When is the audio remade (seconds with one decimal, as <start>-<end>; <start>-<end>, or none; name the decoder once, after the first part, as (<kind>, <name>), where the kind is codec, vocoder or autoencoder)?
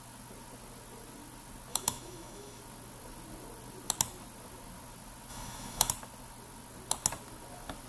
1.7-2.6 (autoencoder, DAC-VAE); 5.3-5.9